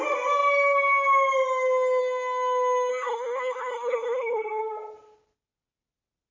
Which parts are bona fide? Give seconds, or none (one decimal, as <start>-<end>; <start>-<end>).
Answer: 0.0-2.9; 4.6-6.3

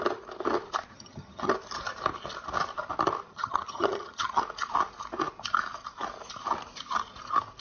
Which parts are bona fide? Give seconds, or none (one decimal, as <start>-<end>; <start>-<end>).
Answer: 0.0-0.9; 1.5-3.3; 4.4-7.6